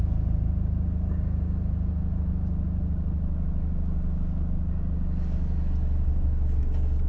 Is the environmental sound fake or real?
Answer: real